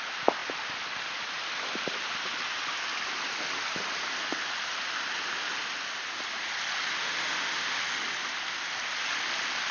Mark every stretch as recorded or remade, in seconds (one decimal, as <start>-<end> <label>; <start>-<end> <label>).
0.0-7.0 recorded; 7.0-7.8 remade; 7.8-9.7 recorded

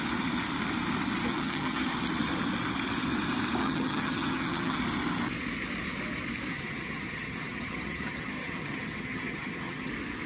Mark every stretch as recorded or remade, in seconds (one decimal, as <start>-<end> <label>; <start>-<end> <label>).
0.0-1.3 recorded; 1.3-1.9 remade; 1.9-3.6 recorded; 3.6-4.8 remade; 4.8-6.5 recorded; 6.5-9.9 remade; 9.9-10.3 recorded

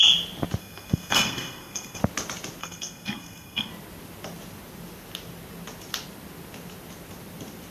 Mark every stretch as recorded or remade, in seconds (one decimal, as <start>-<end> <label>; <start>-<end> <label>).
0.0-0.6 recorded; 0.6-2.0 remade; 2.0-2.6 recorded; 2.6-3.7 remade; 3.7-7.7 recorded